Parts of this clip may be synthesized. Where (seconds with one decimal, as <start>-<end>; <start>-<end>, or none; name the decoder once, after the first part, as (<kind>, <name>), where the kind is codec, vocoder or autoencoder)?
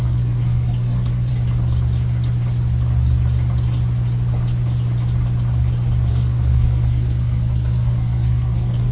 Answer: 0.0-1.3 (codec, SNAC); 6.1-8.9